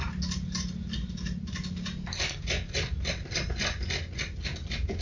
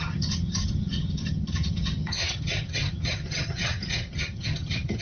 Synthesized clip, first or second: second